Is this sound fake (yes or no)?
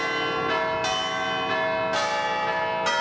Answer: no